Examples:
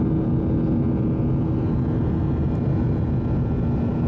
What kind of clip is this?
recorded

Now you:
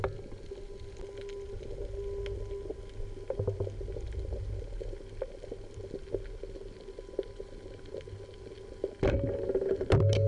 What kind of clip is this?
recorded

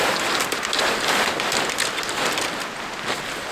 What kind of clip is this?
recorded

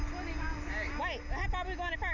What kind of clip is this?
recorded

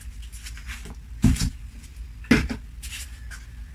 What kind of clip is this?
recorded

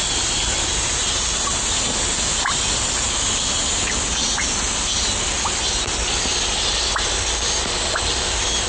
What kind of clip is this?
recorded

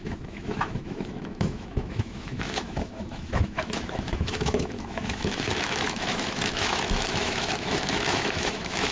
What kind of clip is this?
remade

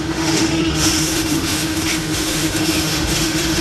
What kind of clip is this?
remade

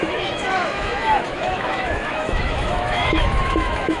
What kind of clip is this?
remade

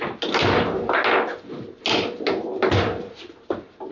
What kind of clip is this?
recorded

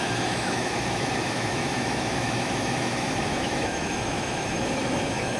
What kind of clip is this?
remade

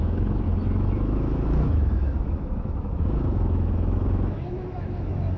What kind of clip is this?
remade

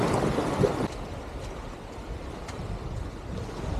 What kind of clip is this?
recorded